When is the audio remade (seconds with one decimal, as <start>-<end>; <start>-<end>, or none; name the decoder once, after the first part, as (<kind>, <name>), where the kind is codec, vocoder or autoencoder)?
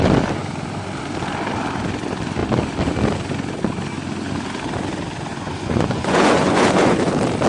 5.3-7.1 (vocoder, Vocos)